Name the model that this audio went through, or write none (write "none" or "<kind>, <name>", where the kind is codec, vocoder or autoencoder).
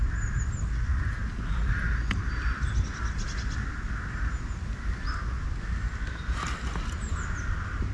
none